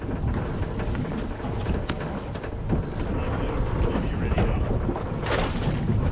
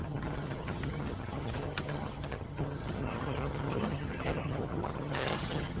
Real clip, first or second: first